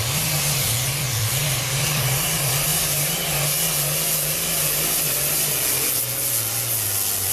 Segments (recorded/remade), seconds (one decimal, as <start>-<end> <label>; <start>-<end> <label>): 0.0-2.7 remade; 2.7-7.3 recorded